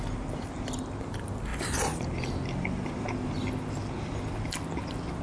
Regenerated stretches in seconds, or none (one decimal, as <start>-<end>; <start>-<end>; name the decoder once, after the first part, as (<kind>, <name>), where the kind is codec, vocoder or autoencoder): none